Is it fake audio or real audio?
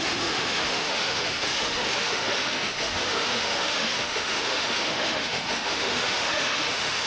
fake